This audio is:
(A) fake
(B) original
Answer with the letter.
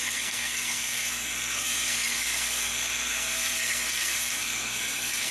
A